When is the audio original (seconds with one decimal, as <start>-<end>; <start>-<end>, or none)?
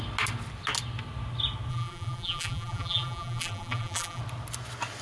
0.0-1.7; 4.2-5.0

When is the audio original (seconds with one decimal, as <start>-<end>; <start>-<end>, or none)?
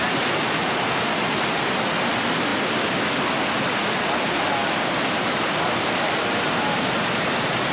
0.0-7.7